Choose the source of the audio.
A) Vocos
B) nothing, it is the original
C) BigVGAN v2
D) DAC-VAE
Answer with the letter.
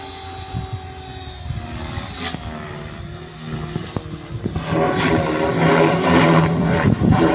B